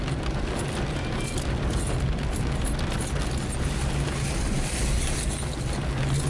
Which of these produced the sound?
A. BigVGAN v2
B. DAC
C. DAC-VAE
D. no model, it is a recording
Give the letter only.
D